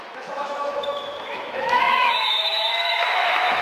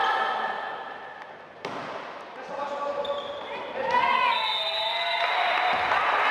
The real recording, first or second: second